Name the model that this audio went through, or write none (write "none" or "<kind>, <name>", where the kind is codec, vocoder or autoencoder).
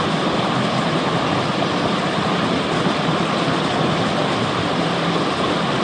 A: none